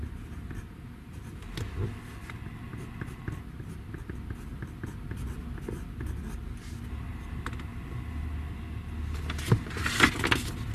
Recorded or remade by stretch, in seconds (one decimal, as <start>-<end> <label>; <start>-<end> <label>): 0.0-10.7 recorded